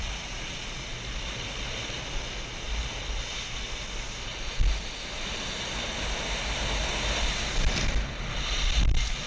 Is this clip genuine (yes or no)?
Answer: yes